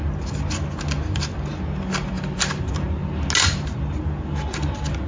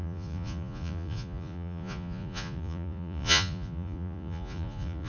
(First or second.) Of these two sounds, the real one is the first